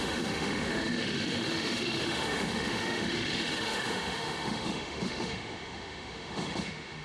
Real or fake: fake